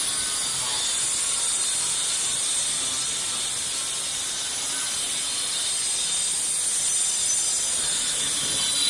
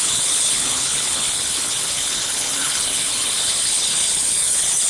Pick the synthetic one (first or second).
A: second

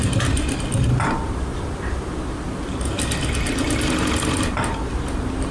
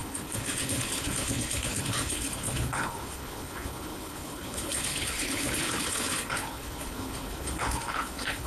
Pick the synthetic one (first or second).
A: second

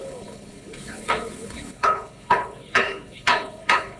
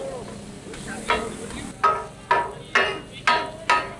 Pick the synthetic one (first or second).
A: first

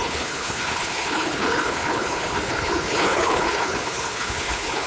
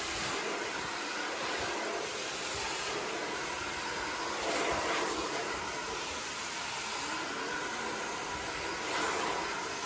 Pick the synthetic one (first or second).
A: first